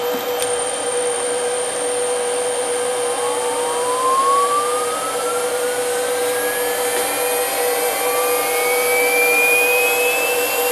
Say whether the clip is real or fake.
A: real